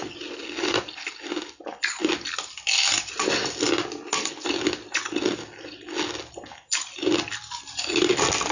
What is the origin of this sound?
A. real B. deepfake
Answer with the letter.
A